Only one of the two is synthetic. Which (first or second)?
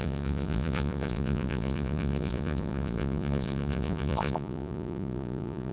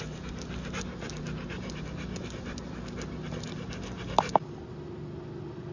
first